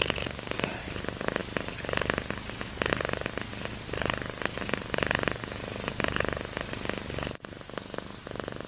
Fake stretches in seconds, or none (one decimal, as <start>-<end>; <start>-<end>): none